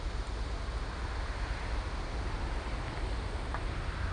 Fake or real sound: real